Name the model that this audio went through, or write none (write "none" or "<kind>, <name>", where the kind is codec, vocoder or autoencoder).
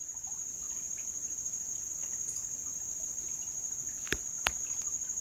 none